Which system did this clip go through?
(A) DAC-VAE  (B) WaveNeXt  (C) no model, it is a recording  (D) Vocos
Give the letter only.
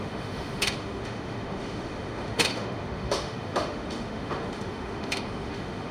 A